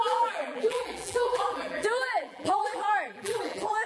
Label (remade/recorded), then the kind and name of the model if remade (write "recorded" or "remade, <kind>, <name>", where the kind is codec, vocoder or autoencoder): remade, vocoder, BigVGAN v2